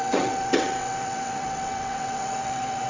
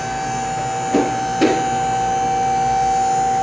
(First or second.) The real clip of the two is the second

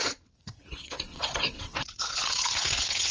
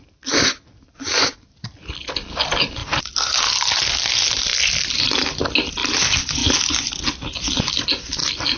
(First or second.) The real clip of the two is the second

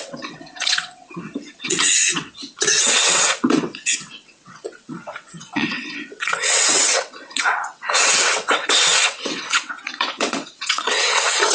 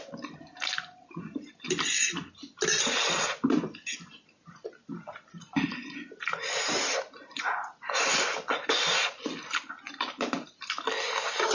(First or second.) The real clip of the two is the second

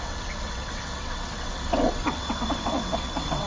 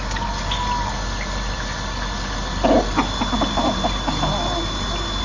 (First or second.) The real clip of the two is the second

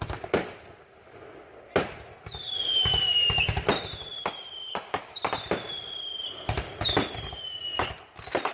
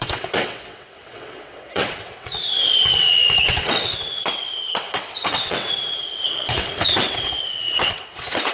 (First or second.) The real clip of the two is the first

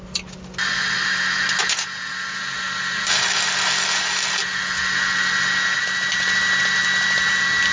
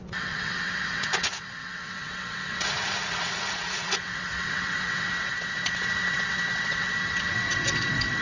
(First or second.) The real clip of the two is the first